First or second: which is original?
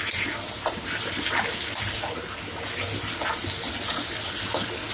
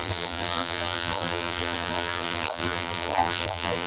first